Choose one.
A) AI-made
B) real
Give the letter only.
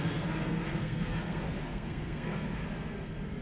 A